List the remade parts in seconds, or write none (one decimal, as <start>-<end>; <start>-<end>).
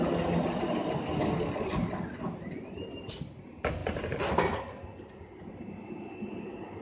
none